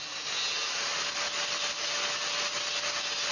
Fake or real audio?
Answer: real